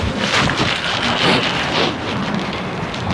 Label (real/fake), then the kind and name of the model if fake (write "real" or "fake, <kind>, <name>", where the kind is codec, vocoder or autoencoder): real